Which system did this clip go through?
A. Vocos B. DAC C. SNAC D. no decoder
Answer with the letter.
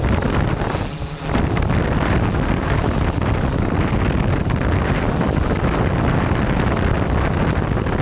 D